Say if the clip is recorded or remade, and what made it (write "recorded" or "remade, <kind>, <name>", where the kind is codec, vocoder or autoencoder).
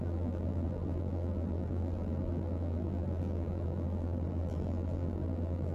remade, vocoder, BigVGAN v2